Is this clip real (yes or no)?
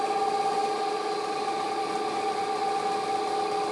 yes